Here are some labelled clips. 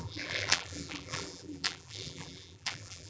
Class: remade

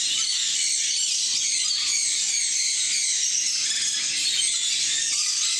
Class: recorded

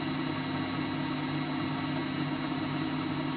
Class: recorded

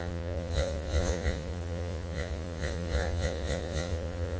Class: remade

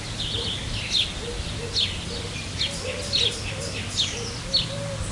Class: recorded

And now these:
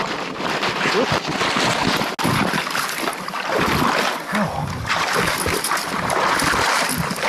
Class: recorded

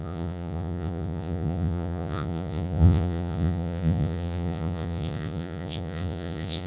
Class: remade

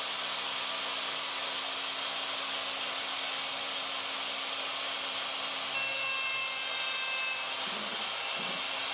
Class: recorded